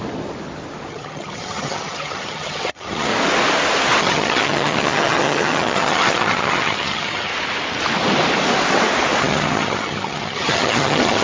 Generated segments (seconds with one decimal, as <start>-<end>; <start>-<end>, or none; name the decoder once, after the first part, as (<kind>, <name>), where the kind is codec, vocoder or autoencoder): 0.9-3.1 (vocoder, HiFi-GAN); 4.0-7.3; 9.2-11.2